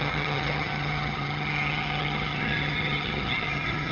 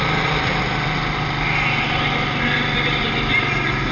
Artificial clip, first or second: first